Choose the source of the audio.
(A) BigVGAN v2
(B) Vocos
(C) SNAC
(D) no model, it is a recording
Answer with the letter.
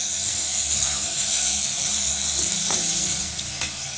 C